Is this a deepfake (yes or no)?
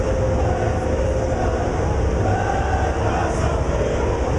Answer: no